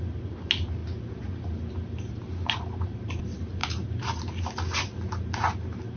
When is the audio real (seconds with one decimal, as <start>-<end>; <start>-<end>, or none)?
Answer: 0.0-3.6; 4.2-6.0